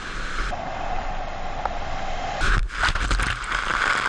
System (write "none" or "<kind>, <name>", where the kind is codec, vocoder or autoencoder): none